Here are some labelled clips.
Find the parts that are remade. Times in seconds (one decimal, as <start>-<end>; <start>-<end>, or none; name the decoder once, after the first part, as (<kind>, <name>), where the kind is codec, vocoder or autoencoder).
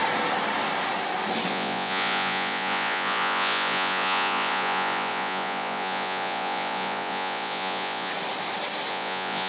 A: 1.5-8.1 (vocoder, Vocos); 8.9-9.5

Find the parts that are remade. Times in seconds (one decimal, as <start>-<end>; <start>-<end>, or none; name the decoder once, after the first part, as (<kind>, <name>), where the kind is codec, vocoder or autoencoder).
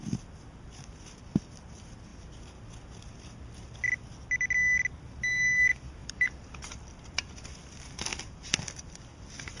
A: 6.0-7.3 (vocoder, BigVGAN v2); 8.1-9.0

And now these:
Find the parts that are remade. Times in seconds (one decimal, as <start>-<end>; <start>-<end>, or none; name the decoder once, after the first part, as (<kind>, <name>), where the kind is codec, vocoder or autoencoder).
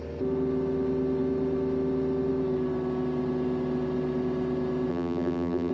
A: 4.9-5.7 (vocoder, BigVGAN v2)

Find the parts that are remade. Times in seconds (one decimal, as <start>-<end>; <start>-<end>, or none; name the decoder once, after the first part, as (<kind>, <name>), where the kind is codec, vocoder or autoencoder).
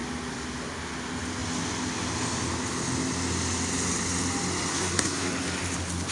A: 4.7-5.3 (codec, SNAC)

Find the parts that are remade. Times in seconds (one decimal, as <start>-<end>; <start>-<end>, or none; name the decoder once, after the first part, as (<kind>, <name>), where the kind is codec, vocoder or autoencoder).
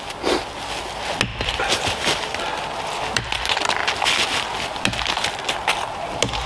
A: 1.3-2.4 (vocoder, BigVGAN v2)